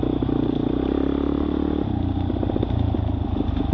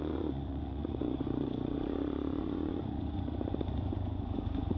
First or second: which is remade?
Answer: second